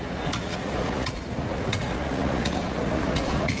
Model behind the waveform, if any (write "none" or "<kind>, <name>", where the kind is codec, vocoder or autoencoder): vocoder, Vocos